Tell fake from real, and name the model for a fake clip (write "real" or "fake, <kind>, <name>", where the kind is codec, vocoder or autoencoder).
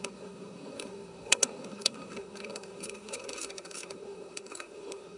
fake, codec, SNAC